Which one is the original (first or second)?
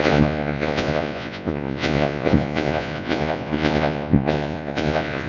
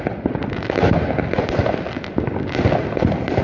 second